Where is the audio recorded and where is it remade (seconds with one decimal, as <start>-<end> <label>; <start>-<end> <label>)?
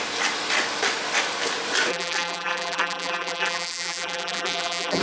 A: 0.0-1.9 recorded; 1.9-5.0 remade